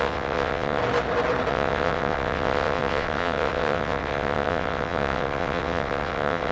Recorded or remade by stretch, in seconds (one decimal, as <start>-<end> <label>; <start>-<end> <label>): 0.0-0.8 remade; 0.8-1.5 recorded; 1.5-6.5 remade